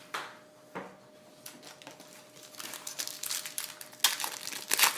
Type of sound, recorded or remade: recorded